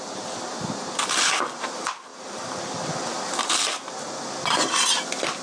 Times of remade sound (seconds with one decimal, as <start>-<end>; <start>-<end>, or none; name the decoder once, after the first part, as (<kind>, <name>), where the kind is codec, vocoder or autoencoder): none